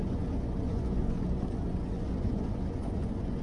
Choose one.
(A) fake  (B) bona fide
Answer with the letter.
A